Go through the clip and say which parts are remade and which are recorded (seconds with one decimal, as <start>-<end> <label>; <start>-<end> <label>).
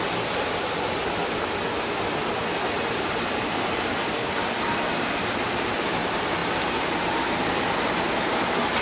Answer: 0.0-8.8 recorded